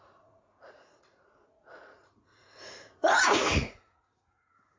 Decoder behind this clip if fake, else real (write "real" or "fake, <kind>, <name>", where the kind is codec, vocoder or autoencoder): fake, vocoder, Vocos